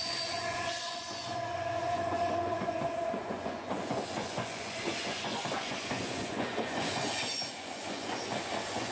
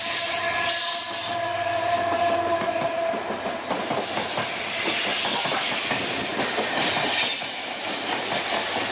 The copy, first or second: first